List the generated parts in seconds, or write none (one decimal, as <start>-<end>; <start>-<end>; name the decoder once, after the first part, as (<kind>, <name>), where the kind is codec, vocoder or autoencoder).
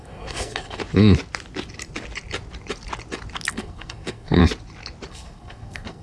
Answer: 0.0-0.8 (codec, SNAC); 3.5-4.4; 5.1-6.0